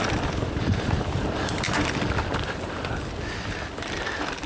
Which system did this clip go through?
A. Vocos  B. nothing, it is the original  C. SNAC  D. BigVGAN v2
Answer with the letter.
B